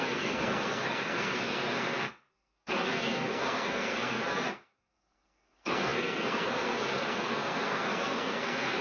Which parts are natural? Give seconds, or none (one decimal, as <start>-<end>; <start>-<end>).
none